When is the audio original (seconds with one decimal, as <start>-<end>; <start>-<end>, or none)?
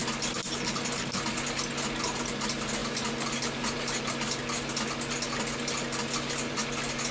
0.0-7.1